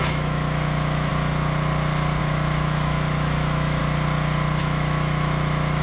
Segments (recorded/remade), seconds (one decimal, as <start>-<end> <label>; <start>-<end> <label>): 0.0-1.1 remade; 1.1-2.2 recorded; 2.2-3.8 remade; 3.8-4.6 recorded; 4.6-5.8 remade